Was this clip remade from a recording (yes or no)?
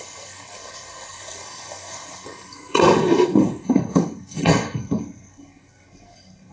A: yes